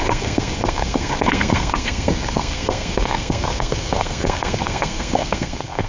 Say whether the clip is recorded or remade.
remade